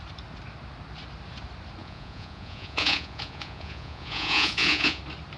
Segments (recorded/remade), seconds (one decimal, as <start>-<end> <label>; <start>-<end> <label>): 0.0-1.8 recorded; 1.8-5.0 remade; 5.0-5.4 recorded